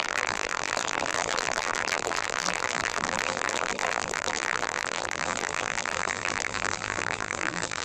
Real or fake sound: fake